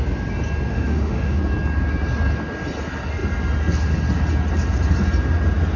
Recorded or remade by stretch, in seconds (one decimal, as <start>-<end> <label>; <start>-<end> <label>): 0.0-0.7 recorded; 0.7-1.4 remade; 1.4-5.8 recorded